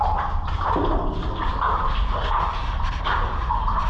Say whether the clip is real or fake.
real